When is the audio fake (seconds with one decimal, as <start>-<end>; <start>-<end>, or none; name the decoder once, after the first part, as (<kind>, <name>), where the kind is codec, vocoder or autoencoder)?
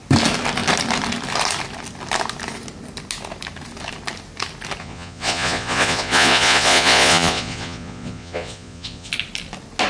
4.8-9.1 (vocoder, Vocos)